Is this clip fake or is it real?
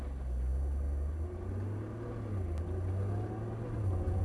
real